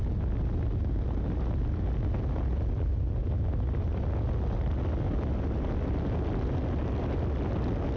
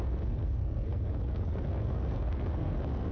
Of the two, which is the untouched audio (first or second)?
first